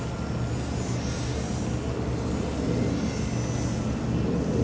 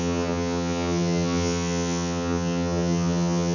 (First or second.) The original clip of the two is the first